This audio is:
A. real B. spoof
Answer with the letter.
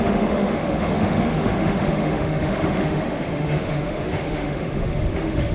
B